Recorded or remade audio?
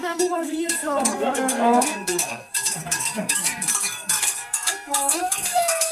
remade